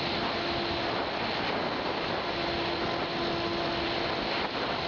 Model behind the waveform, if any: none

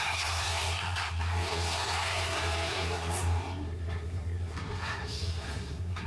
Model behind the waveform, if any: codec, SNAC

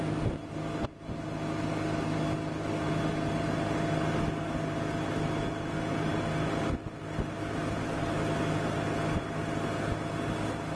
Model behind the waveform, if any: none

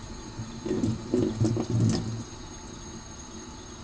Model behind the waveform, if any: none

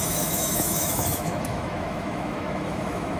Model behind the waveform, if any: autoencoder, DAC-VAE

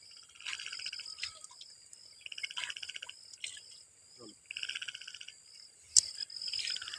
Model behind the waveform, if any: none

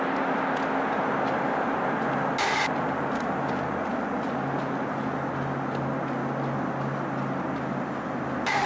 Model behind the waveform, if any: none